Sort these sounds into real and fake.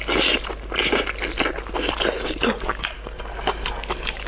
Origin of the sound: real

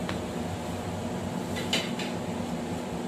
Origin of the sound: real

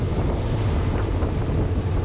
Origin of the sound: real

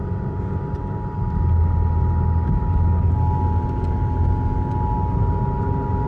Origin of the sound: real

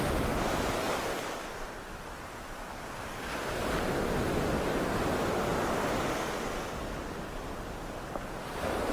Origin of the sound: real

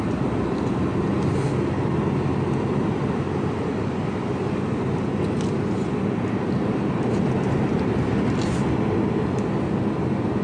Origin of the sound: real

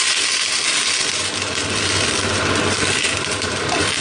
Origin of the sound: real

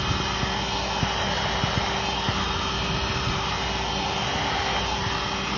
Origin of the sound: real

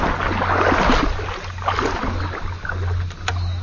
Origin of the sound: real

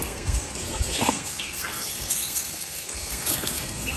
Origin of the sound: fake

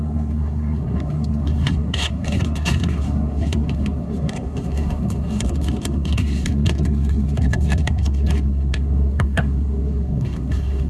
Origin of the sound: fake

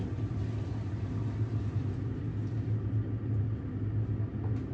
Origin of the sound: real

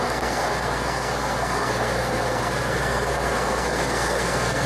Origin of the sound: fake